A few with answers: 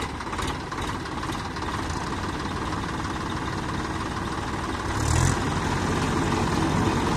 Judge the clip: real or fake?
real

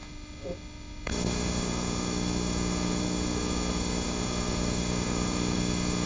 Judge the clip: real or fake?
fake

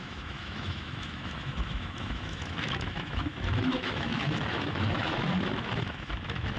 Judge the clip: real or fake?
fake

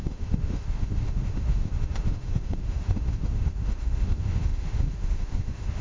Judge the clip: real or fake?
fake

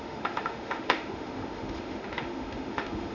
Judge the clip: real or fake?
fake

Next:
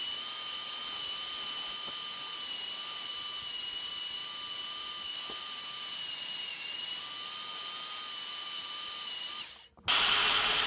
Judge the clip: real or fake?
real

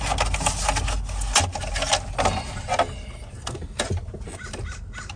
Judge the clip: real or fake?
real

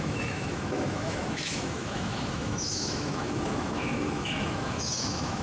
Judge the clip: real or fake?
fake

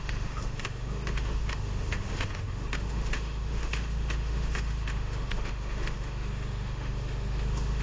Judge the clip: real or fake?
fake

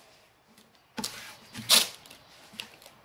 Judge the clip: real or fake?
real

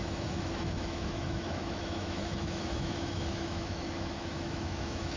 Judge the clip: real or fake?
fake